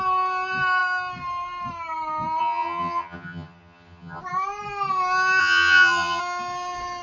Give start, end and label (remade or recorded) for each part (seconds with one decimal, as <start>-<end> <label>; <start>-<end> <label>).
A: 0.0-2.4 recorded; 2.4-4.2 remade; 4.2-5.4 recorded; 5.4-6.2 remade; 6.2-7.0 recorded